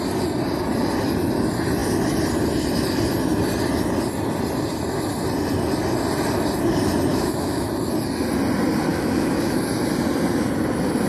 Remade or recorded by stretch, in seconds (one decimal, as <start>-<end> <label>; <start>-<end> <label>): 0.0-7.1 recorded; 7.1-7.7 remade; 7.7-8.9 recorded; 8.9-9.6 remade; 9.6-11.1 recorded

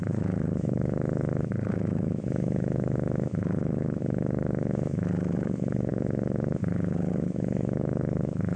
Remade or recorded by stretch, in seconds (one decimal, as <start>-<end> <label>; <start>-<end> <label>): 0.0-8.6 remade